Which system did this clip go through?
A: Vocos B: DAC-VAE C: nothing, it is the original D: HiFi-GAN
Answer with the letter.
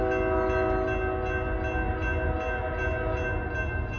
C